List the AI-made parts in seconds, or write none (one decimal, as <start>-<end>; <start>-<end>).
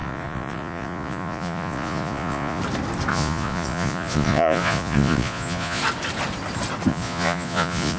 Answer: 0.0-2.6; 3.1-5.8; 6.9-8.0